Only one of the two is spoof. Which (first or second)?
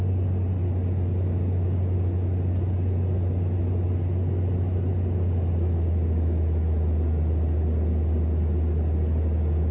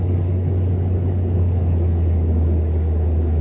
second